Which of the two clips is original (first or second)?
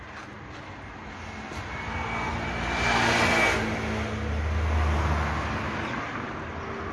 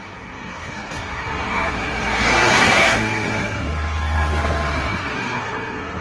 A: first